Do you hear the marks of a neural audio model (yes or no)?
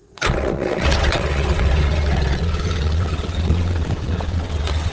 yes